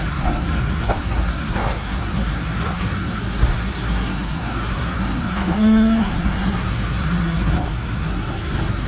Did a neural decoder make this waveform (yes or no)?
yes